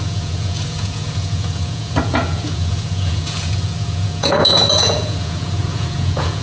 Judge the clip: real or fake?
fake